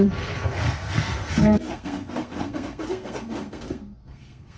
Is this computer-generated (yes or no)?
yes